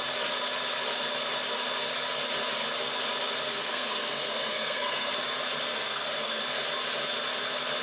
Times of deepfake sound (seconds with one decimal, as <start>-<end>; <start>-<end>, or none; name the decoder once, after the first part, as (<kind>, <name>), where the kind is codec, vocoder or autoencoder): 3.5-5.1 (codec, SNAC); 5.7-6.4